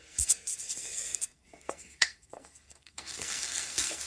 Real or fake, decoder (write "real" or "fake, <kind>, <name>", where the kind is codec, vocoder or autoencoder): fake, codec, SNAC